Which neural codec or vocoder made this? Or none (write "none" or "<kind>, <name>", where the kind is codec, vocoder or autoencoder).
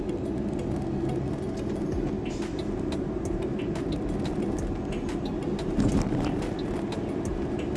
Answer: none